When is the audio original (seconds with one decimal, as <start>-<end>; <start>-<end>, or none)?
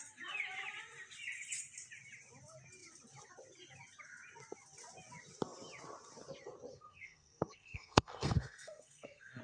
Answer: 0.0-6.7